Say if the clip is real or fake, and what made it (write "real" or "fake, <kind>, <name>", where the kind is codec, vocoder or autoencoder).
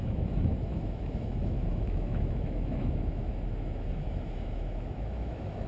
fake, autoencoder, DAC-VAE